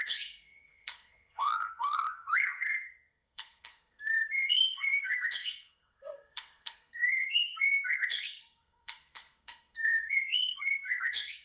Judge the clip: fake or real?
fake